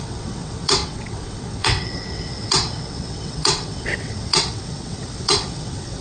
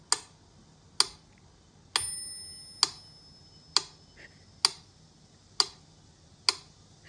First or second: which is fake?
first